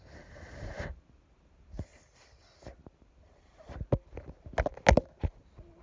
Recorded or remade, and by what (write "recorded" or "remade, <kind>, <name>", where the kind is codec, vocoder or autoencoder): recorded